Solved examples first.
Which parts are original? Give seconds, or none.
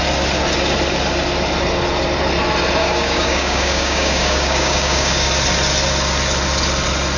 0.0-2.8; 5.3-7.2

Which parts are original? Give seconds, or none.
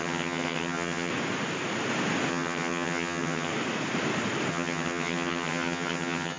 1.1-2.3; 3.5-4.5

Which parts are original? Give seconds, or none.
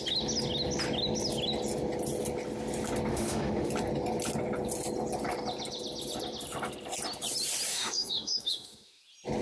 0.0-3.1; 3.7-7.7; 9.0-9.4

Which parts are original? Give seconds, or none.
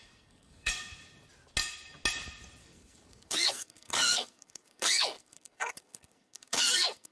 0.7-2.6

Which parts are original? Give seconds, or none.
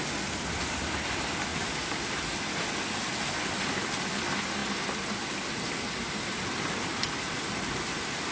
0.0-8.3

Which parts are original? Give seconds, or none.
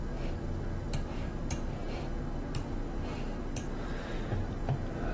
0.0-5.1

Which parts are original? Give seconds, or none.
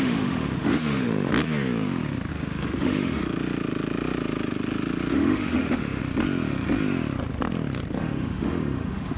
1.3-2.3; 3.2-5.1; 6.0-8.0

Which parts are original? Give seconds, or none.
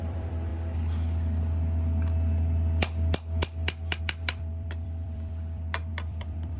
0.5-4.0